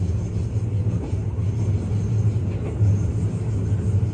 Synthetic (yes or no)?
no